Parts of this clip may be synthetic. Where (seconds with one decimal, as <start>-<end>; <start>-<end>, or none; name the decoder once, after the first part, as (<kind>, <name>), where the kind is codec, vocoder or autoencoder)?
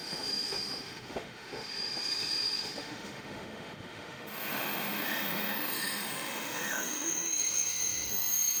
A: 0.0-8.6 (autoencoder, DAC-VAE)